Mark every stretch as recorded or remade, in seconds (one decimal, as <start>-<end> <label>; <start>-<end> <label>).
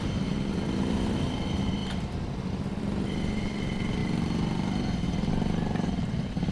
0.0-6.5 recorded